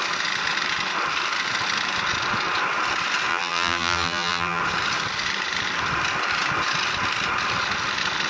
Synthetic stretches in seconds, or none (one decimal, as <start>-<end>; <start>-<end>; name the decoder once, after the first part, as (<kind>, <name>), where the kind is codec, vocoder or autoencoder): 3.3-4.6 (vocoder, BigVGAN v2)